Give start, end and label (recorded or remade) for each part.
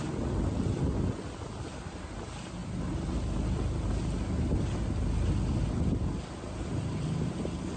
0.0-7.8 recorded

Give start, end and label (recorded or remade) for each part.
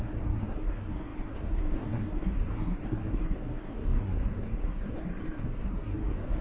0.0-6.4 remade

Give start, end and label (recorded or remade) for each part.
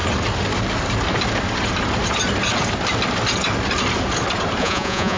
0.0-4.6 recorded; 4.6-5.2 remade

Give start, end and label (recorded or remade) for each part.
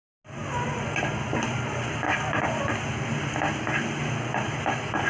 0.0-5.1 recorded